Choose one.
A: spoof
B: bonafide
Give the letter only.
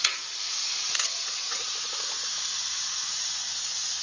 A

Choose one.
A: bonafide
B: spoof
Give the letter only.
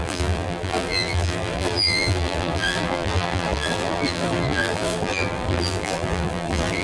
B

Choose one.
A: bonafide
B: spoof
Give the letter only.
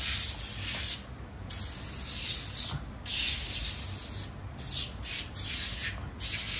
A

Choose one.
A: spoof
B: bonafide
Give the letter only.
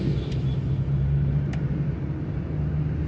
B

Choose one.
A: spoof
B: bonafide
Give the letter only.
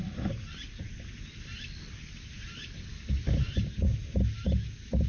B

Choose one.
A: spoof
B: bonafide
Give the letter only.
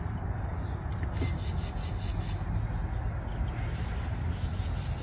B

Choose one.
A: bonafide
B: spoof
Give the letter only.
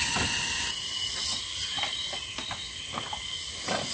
A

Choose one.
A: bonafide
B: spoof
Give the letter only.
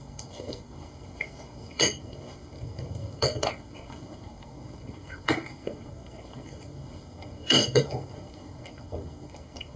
B